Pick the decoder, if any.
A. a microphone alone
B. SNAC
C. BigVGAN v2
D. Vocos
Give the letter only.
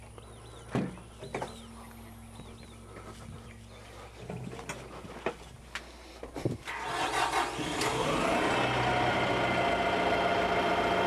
A